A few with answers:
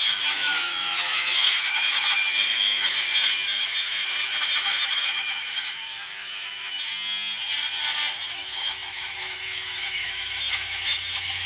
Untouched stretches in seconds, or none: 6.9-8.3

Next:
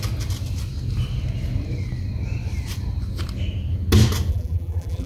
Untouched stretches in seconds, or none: 0.0-4.3

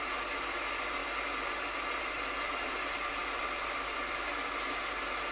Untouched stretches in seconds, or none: 0.0-5.3

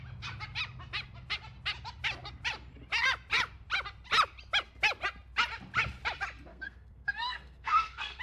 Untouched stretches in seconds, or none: 0.0-6.5

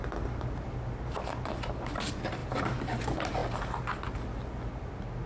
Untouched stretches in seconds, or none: 0.0-2.4; 3.0-5.3

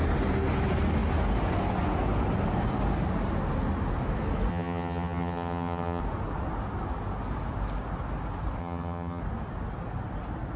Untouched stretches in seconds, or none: 0.0-4.5; 6.0-8.6; 9.2-10.6

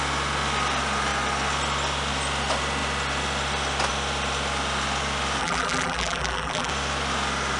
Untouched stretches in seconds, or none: 0.0-5.4; 6.7-7.6

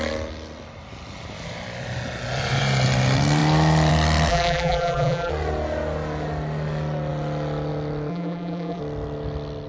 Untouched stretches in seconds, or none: 0.0-4.3; 5.3-8.1; 8.8-9.7